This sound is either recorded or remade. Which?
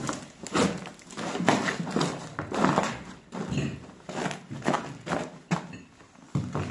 recorded